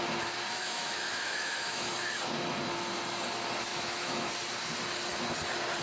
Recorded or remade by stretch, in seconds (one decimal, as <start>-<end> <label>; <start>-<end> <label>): 0.0-0.6 recorded; 0.6-1.9 remade; 1.9-3.7 recorded; 3.7-4.3 remade; 4.3-5.8 recorded